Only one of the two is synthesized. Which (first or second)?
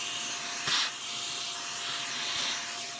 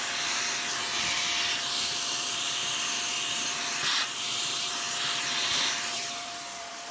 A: second